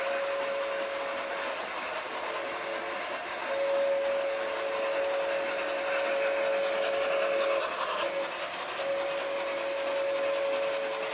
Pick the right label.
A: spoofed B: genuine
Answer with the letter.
B